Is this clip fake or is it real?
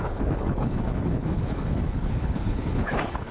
fake